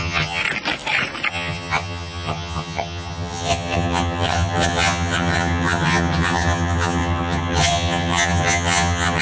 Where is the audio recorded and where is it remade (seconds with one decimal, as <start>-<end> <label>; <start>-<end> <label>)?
0.0-0.4 remade; 0.4-1.3 recorded; 1.3-9.2 remade